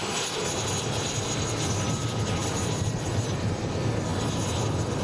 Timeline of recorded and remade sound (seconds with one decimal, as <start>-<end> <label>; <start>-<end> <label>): 0.0-2.4 recorded; 2.4-3.1 remade; 3.1-5.0 recorded